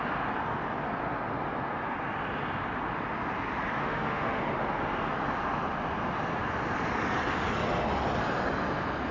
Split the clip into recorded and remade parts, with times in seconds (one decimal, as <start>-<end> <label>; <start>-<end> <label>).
0.0-3.8 recorded; 3.8-4.4 remade; 4.4-9.1 recorded